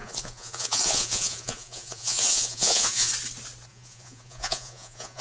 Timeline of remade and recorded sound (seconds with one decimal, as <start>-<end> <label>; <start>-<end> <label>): 0.0-3.1 remade; 3.1-3.7 recorded; 3.7-5.2 remade